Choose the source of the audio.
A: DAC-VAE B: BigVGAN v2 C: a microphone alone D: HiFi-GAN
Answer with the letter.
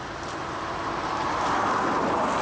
C